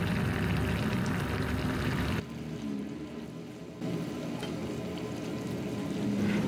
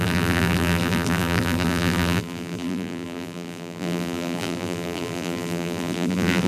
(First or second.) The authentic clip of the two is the first